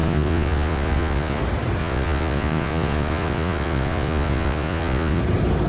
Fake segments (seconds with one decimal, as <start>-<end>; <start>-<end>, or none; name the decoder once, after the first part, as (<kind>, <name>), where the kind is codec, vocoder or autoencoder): 0.0-1.4 (vocoder, Vocos); 1.8-5.2

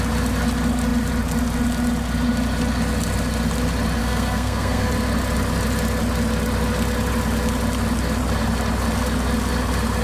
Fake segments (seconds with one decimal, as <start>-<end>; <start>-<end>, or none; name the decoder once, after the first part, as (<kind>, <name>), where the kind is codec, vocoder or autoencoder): 4.0-4.9 (codec, SNAC)